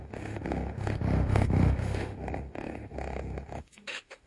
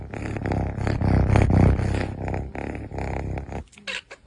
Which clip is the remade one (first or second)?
first